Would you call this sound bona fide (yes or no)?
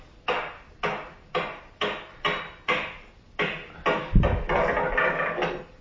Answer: yes